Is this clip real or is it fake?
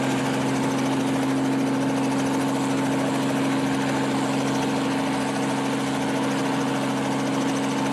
real